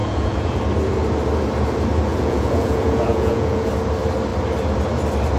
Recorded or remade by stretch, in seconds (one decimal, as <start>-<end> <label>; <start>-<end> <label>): 0.0-0.6 remade; 0.6-2.1 recorded; 2.1-3.7 remade; 3.7-5.4 recorded

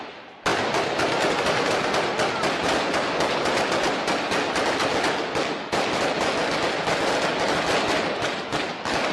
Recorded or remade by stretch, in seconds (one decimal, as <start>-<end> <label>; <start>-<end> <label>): 0.0-9.1 recorded